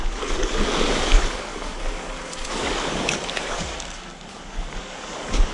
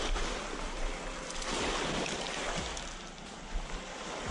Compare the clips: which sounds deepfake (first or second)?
first